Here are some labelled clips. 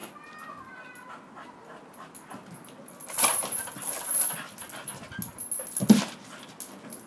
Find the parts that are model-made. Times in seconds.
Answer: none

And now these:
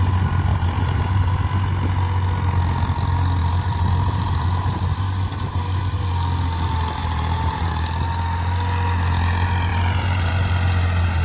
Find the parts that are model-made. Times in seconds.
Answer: 0.5-1.3 (vocoder, BigVGAN v2); 3.4-4.8; 7.0-7.7; 9.7-10.3

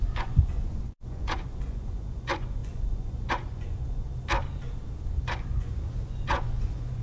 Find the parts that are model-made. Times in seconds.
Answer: 0.0-4.1 (vocoder, Vocos); 5.2-7.0